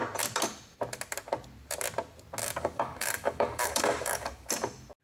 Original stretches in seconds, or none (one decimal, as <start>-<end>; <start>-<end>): 0.0-2.4; 4.5-5.0